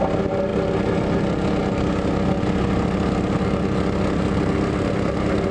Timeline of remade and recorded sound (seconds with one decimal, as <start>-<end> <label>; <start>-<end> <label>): 0.0-5.5 recorded